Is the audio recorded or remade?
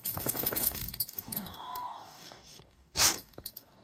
remade